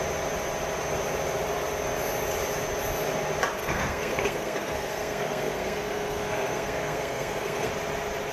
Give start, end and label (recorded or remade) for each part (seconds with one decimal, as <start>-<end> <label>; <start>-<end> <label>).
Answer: 0.0-3.6 recorded; 3.6-7.7 remade; 7.7-8.3 recorded